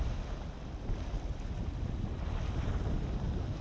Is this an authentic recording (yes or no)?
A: yes